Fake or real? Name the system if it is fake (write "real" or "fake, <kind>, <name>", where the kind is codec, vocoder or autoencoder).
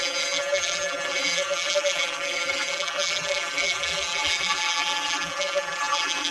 fake, vocoder, BigVGAN v2